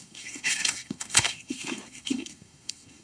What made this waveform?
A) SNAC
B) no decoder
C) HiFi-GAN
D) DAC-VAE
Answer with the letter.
A